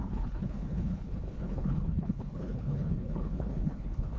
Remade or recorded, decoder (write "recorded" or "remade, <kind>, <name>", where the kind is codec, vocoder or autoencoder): remade, codec, HILCodec